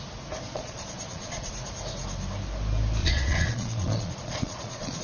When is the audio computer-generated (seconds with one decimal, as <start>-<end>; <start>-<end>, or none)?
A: 0.5-1.5; 3.0-5.0